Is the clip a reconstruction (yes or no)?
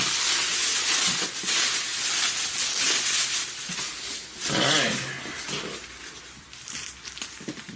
no